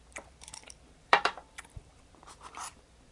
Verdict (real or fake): fake